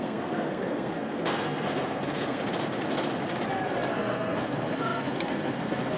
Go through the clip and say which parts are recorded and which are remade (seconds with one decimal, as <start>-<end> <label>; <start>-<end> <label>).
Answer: 0.0-2.4 remade; 2.4-3.9 recorded; 3.9-6.0 remade